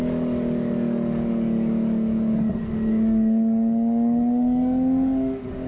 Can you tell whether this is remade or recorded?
remade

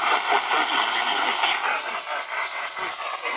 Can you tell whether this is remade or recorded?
recorded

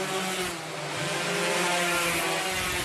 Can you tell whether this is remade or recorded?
recorded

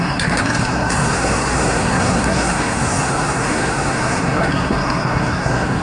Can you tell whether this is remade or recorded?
remade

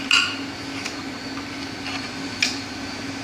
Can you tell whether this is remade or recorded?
recorded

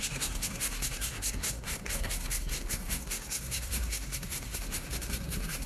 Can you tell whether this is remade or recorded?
remade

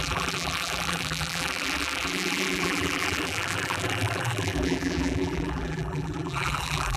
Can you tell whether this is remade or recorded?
remade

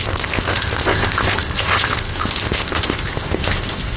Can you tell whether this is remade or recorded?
remade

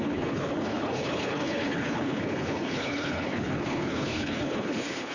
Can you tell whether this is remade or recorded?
remade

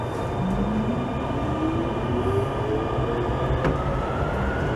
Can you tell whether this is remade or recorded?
recorded